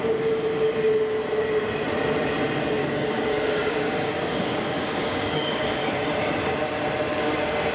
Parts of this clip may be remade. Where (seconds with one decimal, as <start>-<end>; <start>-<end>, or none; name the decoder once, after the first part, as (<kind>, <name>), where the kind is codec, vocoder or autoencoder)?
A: 2.8-5.8 (codec, DAC)